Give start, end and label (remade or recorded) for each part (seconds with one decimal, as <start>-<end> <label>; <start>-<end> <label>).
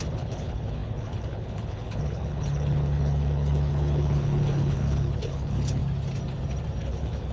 0.0-5.8 remade; 5.8-6.8 recorded; 6.8-7.3 remade